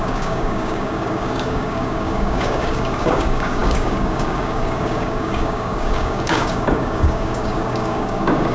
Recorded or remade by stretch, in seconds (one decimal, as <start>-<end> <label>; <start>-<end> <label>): 0.0-8.5 remade